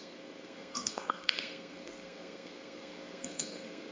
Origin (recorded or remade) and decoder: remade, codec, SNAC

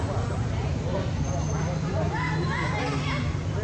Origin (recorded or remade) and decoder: recorded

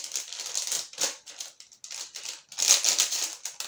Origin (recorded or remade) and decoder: recorded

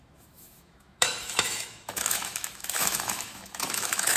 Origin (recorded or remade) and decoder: remade, autoencoder, DAC-VAE